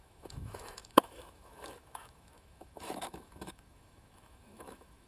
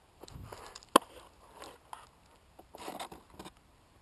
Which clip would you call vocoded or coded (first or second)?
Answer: first